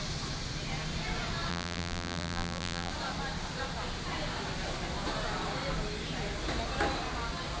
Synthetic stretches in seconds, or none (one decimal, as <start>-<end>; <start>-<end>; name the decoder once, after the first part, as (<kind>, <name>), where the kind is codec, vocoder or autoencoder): 1.5-2.9 (vocoder, BigVGAN v2)